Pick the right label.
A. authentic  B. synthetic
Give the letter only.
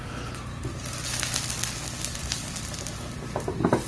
A